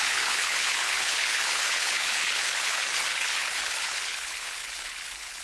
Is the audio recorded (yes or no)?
no